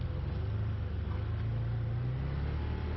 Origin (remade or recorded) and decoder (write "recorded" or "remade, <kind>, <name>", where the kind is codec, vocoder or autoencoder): recorded